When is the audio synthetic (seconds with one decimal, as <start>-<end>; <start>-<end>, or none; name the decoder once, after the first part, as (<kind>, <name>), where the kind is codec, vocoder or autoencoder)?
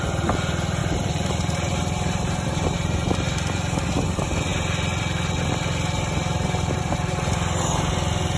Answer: 0.8-3.1 (vocoder, BigVGAN v2)